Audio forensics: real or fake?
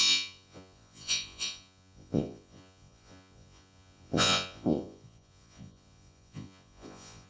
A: fake